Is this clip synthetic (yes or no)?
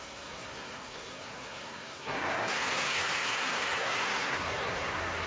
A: yes